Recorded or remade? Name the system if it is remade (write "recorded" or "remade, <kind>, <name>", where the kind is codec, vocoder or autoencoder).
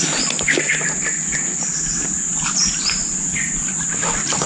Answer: recorded